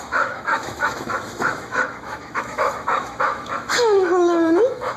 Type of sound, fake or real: fake